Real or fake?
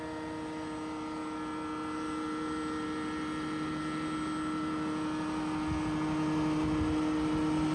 real